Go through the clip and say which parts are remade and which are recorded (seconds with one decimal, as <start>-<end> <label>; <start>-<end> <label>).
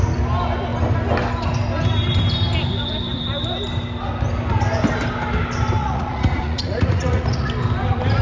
0.0-5.8 recorded; 5.8-7.5 remade; 7.5-8.2 recorded